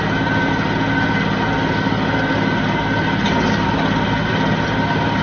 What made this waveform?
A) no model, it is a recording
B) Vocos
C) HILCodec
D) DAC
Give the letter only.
A